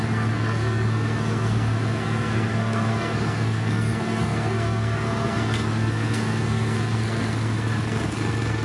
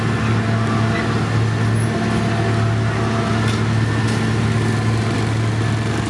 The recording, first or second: second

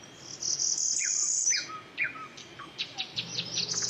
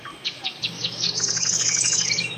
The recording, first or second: first